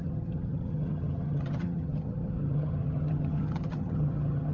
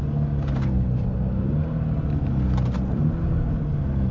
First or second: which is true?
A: second